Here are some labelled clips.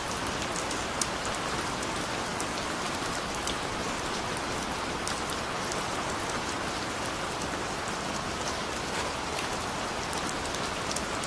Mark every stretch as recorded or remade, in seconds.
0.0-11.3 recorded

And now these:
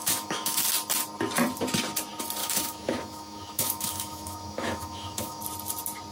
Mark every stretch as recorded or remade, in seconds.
0.0-0.6 remade; 0.6-2.4 recorded; 2.4-5.4 remade; 5.4-6.1 recorded

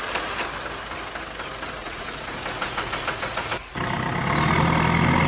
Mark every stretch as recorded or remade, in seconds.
0.0-1.8 recorded; 1.8-3.7 remade; 3.7-5.3 recorded

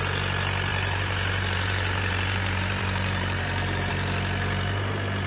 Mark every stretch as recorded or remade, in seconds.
0.0-0.7 recorded; 0.7-3.9 remade; 3.9-5.3 recorded

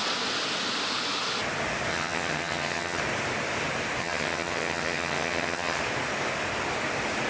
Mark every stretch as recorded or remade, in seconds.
0.0-1.9 recorded; 1.9-3.0 remade; 3.0-4.0 recorded; 4.0-5.8 remade; 5.8-7.3 recorded

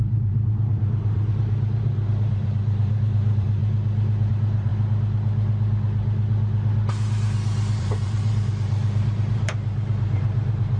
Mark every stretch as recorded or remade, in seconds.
0.0-3.6 remade; 3.6-4.3 recorded; 4.3-4.7 remade; 4.7-7.8 recorded; 7.8-10.8 remade